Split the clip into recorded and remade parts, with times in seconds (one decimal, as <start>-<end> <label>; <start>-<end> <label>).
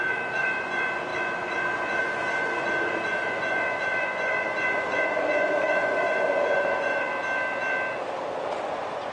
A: 0.0-7.1 remade; 7.1-8.4 recorded; 8.4-9.1 remade